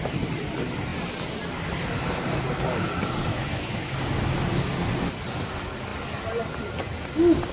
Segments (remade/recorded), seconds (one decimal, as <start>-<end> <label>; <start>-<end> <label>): 0.0-3.3 recorded; 3.3-3.9 remade; 3.9-7.5 recorded